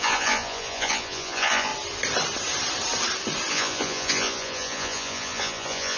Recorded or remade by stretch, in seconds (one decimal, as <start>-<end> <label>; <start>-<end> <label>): 0.0-1.7 remade; 1.7-3.5 recorded; 3.5-6.0 remade